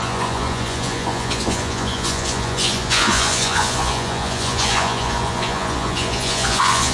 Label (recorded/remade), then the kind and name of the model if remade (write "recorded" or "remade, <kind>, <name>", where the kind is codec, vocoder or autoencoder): remade, vocoder, Vocos